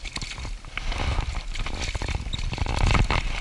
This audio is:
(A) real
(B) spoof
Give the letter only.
A